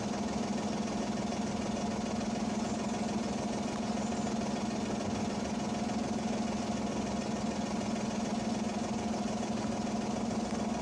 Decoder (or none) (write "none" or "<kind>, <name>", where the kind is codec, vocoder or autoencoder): none